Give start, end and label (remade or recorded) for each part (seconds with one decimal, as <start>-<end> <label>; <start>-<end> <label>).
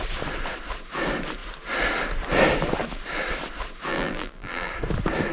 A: 0.0-3.9 recorded; 3.9-4.7 remade; 4.7-5.3 recorded